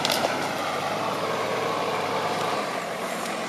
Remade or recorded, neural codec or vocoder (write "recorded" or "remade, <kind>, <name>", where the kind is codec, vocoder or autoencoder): remade, vocoder, BigVGAN v2